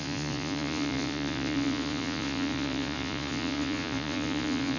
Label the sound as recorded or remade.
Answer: remade